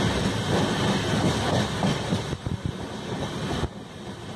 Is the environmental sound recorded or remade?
recorded